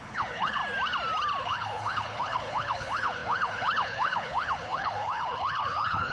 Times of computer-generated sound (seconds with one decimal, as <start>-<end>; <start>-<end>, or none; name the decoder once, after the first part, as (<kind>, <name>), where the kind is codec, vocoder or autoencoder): 0.0-0.6 (codec, HILCodec); 1.4-6.1